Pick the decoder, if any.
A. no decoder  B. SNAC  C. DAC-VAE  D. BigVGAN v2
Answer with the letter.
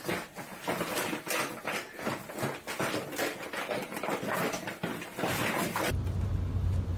A